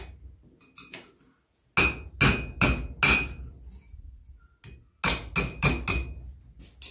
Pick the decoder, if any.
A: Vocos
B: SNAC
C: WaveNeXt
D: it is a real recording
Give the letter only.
D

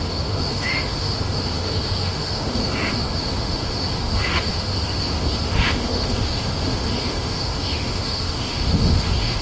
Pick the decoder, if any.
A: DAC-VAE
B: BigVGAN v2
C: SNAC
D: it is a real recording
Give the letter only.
A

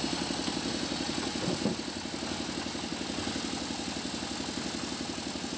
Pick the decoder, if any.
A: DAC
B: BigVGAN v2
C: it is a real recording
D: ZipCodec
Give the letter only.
C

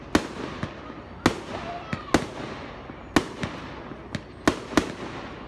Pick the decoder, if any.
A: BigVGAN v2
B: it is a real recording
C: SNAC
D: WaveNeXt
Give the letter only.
B